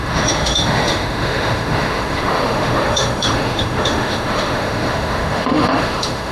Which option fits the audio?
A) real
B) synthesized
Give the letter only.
B